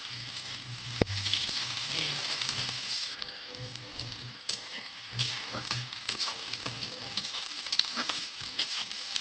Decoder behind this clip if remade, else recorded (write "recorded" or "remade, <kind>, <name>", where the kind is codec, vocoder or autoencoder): remade, codec, DAC